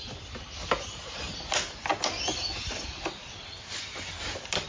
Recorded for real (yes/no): yes